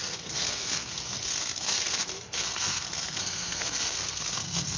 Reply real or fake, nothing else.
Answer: fake